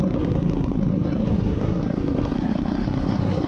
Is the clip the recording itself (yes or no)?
no